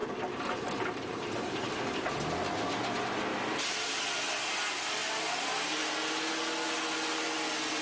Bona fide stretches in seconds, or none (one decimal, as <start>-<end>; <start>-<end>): 1.7-3.3; 4.0-7.8

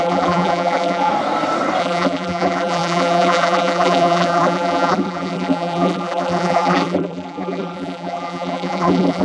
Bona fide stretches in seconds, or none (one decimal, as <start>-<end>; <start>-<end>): 1.1-1.8

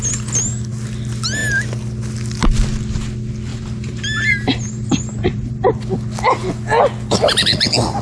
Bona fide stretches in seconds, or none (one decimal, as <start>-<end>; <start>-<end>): 0.0-3.5; 5.7-8.0

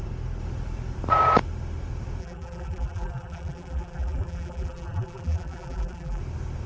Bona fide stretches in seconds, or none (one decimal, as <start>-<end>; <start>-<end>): 0.0-2.2; 6.2-6.7

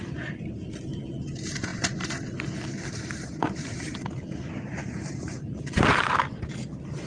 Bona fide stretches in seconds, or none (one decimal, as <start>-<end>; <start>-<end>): 1.7-3.4

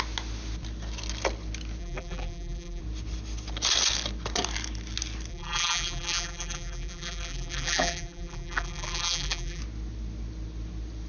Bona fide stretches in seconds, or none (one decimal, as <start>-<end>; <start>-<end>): 0.0-1.8; 2.8-5.3; 9.6-11.1

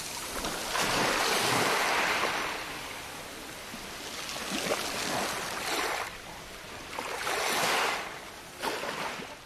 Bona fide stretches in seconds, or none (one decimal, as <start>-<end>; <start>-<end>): 0.0-0.6; 1.2-9.5